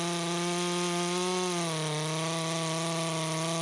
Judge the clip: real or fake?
real